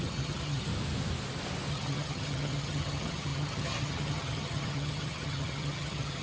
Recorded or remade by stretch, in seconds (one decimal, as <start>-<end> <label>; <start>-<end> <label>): 0.0-0.7 remade; 0.7-1.7 recorded; 1.7-6.2 remade